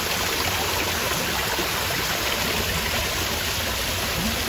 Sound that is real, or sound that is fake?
real